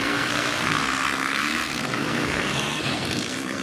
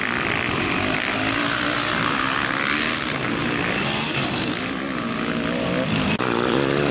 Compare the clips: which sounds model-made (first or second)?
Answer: first